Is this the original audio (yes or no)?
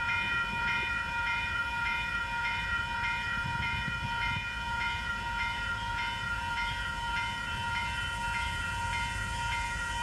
no